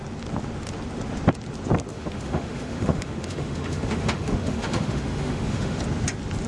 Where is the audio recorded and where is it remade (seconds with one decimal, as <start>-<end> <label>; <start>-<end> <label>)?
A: 0.0-1.9 recorded; 1.9-5.8 remade; 5.8-6.5 recorded